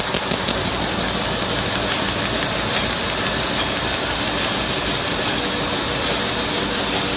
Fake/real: real